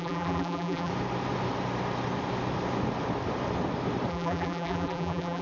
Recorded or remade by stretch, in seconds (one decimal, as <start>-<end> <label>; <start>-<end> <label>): 0.0-0.9 remade; 0.9-4.1 recorded; 4.1-5.4 remade